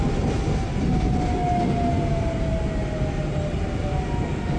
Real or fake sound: real